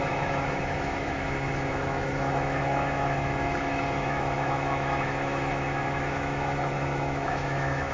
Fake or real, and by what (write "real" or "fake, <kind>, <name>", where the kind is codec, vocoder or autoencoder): fake, autoencoder, DAC-VAE